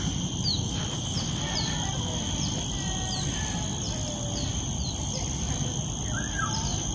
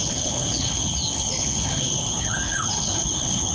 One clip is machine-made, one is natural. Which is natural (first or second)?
first